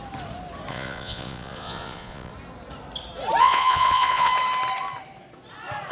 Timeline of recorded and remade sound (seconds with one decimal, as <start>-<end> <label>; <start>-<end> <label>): 0.0-0.7 recorded; 0.7-2.3 remade; 2.3-3.4 recorded; 3.4-4.3 remade; 4.3-5.9 recorded